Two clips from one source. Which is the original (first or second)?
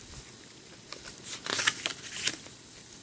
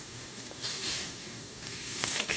first